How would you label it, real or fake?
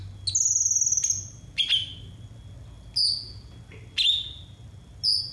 real